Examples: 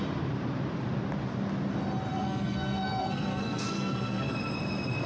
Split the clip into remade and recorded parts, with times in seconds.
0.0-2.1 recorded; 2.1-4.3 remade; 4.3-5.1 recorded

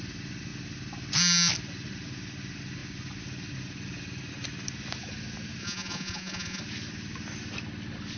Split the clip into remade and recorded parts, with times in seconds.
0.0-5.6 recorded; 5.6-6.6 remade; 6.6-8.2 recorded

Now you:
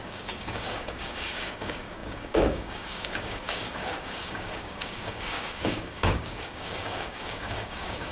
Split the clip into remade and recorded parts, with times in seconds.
0.0-8.1 remade

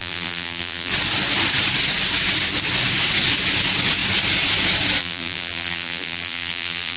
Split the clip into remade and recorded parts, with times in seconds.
0.0-0.9 remade; 0.9-5.0 recorded; 5.0-7.0 remade

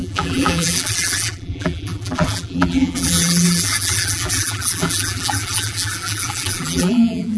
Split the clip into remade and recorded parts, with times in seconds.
0.0-7.4 remade

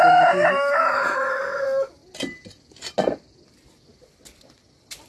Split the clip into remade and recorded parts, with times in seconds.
0.0-2.0 remade; 2.0-5.1 recorded